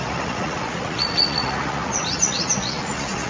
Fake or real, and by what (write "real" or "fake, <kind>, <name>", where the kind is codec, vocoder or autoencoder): fake, vocoder, Vocos